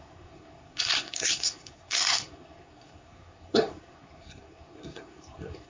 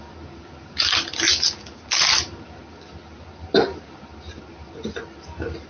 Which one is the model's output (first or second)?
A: first